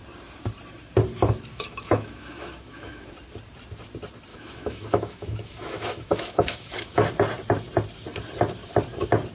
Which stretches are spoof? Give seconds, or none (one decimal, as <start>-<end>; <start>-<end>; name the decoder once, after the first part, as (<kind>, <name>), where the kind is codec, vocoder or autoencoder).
1.5-3.1 (autoencoder, DAC-VAE); 4.3-7.1